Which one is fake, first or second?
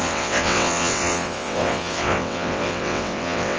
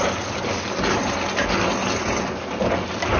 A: first